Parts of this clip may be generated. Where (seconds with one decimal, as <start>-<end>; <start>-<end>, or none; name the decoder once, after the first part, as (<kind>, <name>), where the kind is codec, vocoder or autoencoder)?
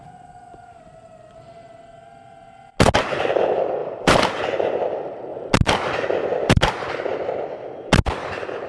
3.8-4.4 (vocoder, BigVGAN v2); 7.1-7.7